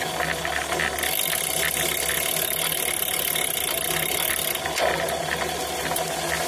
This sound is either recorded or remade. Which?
recorded